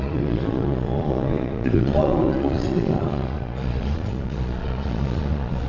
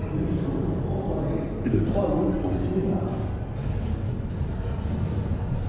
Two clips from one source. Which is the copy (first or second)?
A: first